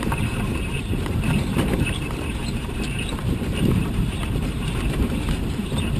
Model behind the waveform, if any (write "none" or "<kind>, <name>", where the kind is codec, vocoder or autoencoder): vocoder, BigVGAN v2